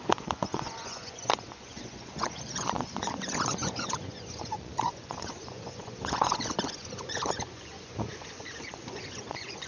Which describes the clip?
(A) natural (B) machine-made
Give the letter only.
B